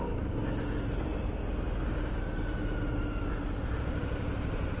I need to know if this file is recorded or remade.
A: recorded